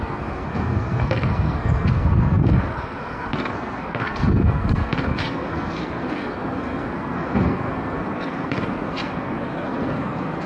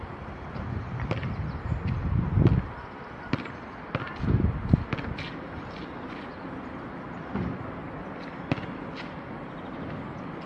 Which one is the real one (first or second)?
second